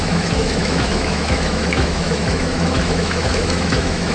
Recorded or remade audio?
remade